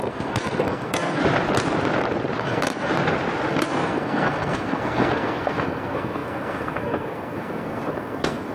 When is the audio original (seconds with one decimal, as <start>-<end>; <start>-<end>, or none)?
1.2-2.4; 2.9-3.5